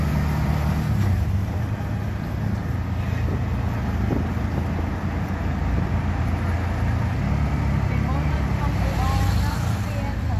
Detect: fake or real real